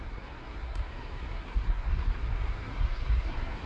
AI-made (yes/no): yes